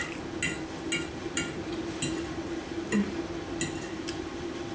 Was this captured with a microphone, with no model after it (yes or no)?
yes